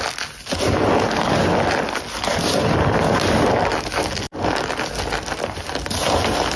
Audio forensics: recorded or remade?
recorded